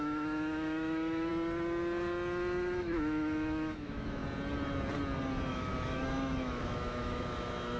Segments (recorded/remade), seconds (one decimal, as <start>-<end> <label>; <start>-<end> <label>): 0.0-1.3 remade; 1.3-2.8 recorded; 2.8-4.2 remade; 4.2-5.5 recorded; 5.5-7.8 remade